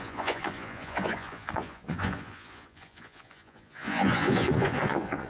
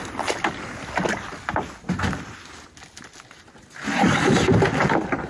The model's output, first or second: first